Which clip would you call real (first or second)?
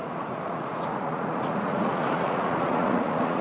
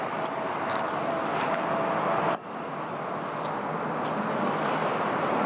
second